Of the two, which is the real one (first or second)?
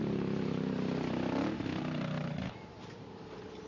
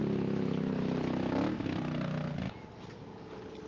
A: second